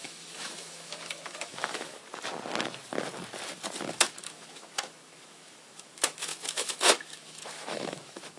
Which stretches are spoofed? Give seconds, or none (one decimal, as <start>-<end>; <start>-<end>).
0.0-2.0; 3.9-8.4